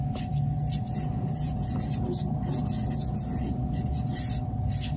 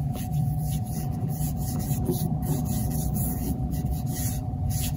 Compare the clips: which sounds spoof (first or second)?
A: second